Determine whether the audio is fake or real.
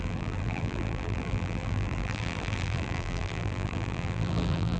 fake